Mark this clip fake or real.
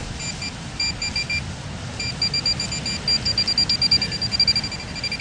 real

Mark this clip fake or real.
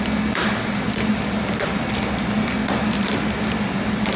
real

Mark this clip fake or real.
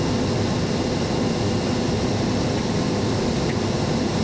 real